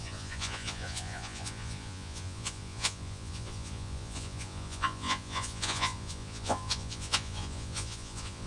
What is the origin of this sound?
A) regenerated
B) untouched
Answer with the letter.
A